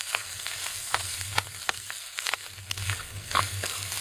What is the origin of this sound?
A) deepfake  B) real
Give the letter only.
A